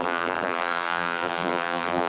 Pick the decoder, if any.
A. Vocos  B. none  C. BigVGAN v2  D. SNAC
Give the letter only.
C